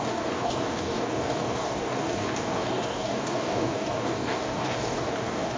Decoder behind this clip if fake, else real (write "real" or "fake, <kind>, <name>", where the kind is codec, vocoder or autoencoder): fake, codec, DAC